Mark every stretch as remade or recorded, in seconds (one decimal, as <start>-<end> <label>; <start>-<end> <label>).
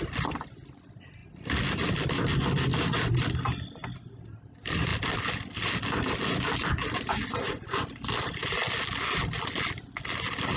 0.0-1.2 recorded; 1.2-3.4 remade; 3.4-10.6 recorded